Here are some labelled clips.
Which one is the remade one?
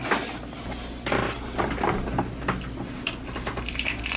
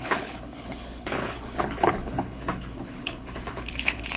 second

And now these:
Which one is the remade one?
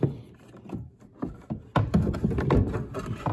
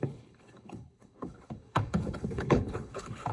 second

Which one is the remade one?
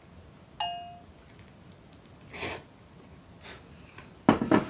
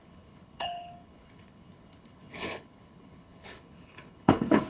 second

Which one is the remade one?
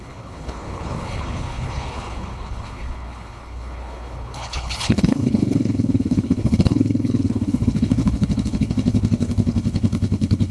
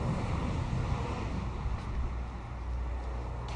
first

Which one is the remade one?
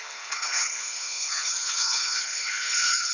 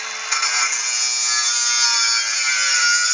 first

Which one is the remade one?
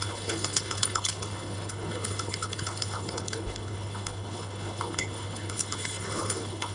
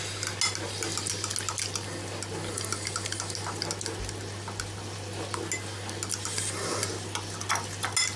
first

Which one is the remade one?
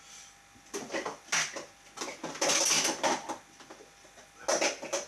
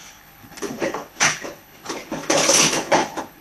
second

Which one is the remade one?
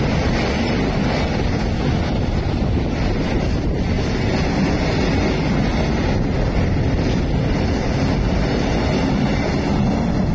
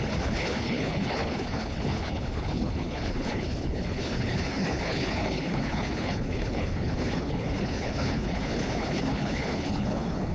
second